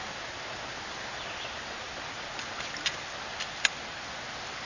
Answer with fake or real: real